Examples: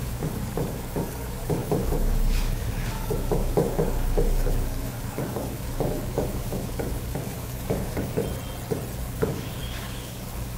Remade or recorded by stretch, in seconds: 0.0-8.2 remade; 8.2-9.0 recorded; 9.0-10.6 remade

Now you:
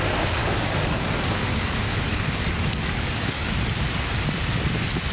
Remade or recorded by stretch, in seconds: 0.0-0.4 recorded; 0.4-3.5 remade; 3.5-5.1 recorded

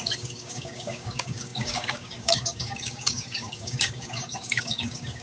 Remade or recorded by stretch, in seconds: 0.0-5.2 remade

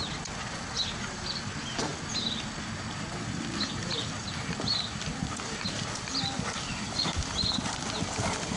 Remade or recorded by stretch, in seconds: 0.0-8.6 recorded